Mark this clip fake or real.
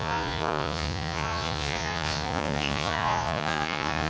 fake